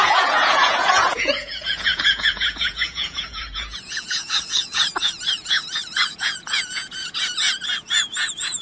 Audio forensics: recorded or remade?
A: remade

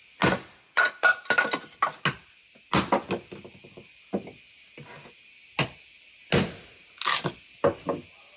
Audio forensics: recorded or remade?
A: recorded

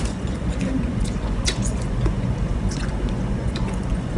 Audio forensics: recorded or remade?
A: remade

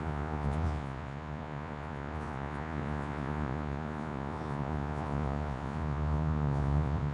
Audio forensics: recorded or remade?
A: remade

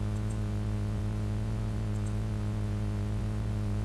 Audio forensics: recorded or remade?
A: remade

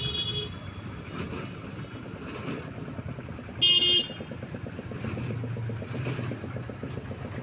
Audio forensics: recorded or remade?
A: recorded